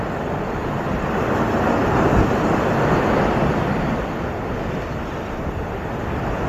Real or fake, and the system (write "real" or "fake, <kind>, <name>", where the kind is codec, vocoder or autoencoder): real